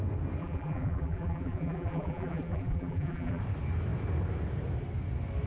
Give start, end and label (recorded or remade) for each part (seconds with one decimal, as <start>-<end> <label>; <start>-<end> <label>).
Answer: 0.0-0.4 recorded; 0.4-3.4 remade; 3.4-5.5 recorded